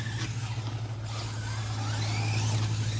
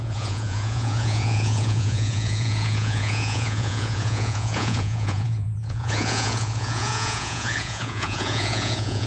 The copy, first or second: second